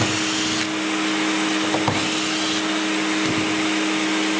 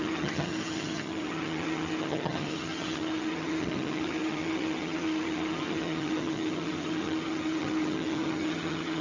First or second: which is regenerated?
second